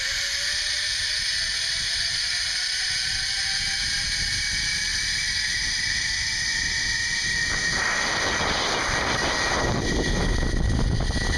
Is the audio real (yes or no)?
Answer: yes